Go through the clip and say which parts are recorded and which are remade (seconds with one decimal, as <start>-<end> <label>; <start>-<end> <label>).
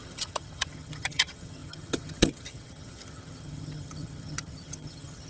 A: 0.0-5.3 remade